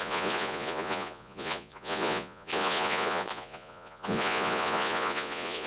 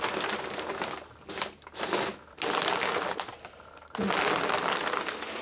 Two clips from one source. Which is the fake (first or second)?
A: first